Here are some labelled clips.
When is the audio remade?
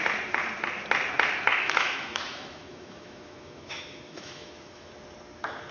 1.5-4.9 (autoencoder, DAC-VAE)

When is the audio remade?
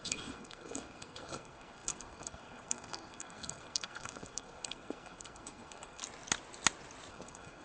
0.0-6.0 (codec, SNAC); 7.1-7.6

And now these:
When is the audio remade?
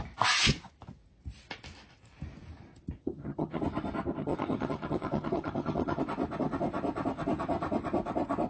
3.0-3.6 (vocoder, HiFi-GAN); 4.2-6.0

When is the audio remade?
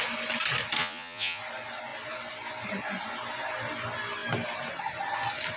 0.8-1.4 (vocoder, Vocos)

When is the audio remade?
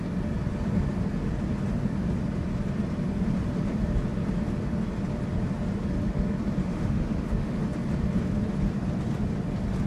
6.6-7.6 (autoencoder, DAC-VAE)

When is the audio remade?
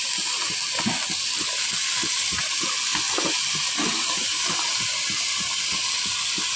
none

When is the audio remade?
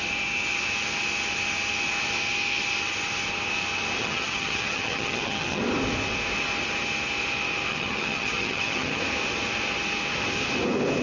4.0-5.6 (vocoder, HiFi-GAN); 7.7-9.0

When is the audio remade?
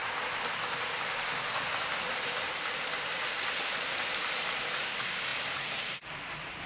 none